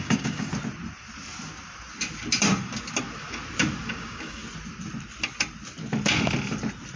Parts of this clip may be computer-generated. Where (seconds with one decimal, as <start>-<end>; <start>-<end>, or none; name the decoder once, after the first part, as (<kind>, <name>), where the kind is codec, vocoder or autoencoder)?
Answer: 0.0-0.5 (codec, DAC); 3.9-4.4